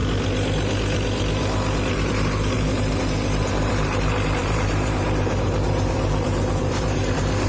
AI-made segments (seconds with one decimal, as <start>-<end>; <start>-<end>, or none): 1.9-7.5